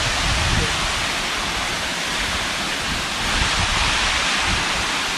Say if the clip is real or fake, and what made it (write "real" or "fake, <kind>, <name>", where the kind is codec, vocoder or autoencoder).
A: real